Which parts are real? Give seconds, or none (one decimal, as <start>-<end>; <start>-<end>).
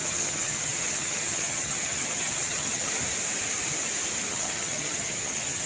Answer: 2.9-4.3